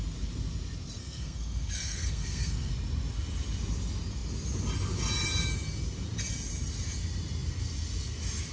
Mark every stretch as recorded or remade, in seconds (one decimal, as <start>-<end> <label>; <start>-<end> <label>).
0.0-1.0 recorded; 1.0-2.7 remade; 2.7-8.5 recorded